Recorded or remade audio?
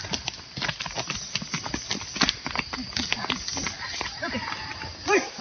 recorded